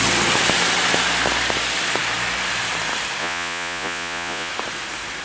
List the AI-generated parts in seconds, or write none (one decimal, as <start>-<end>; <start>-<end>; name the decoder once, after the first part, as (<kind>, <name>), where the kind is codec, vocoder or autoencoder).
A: 3.2-4.5 (vocoder, Vocos)